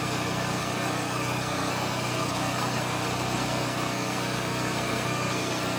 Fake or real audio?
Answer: fake